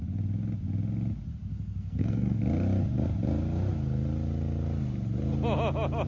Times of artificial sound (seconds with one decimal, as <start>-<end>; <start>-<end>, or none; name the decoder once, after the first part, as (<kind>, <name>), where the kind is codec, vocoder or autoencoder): 1.5-2.4 (codec, SNAC)